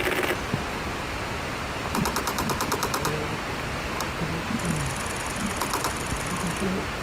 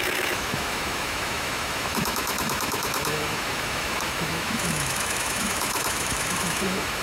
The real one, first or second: first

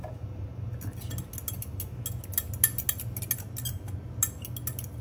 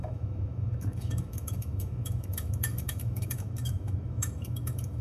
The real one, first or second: first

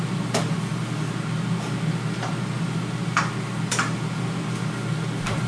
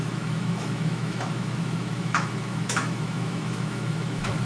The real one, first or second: first